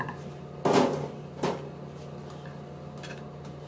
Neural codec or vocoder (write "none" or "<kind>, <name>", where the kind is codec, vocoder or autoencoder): none